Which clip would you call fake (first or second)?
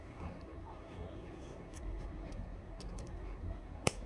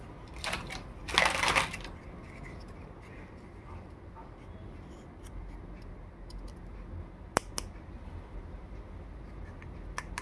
first